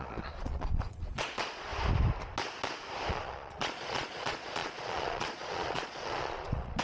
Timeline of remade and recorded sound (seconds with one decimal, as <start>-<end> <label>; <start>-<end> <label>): 0.0-1.7 remade; 1.7-3.1 recorded; 3.1-6.8 remade